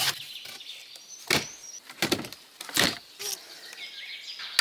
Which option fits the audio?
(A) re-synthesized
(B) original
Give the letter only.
B